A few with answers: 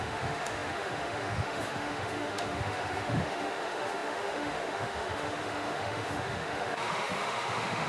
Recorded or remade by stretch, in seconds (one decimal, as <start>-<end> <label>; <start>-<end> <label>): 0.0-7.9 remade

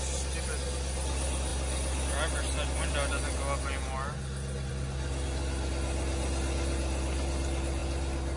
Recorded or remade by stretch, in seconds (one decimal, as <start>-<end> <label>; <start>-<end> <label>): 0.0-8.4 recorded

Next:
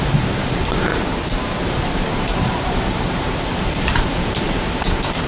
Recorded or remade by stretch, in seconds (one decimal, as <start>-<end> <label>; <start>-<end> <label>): 0.0-0.9 remade; 0.9-1.6 recorded; 1.6-5.3 remade

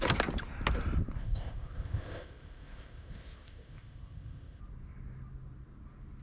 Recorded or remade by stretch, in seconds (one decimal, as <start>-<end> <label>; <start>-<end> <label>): 0.0-1.2 recorded; 1.2-4.6 remade; 4.6-6.2 recorded

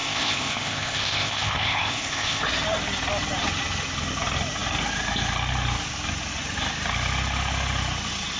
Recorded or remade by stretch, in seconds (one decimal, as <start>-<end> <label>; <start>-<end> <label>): 0.0-2.4 remade; 2.4-8.4 recorded

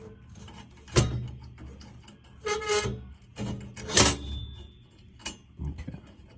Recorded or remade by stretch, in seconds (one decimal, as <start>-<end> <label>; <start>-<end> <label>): 0.0-6.4 recorded

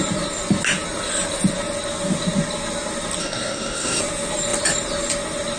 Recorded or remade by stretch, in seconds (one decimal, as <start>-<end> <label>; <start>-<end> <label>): 0.0-3.2 recorded; 3.2-4.0 remade; 4.0-5.6 recorded

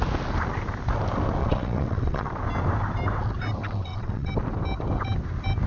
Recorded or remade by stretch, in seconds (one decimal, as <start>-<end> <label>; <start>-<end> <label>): 0.0-1.4 recorded; 1.4-2.3 remade; 2.3-3.6 recorded; 3.6-4.3 remade; 4.3-5.7 recorded